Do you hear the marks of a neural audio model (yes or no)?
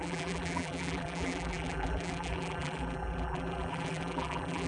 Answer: yes